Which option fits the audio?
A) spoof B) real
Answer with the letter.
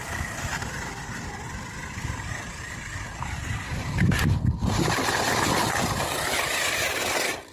A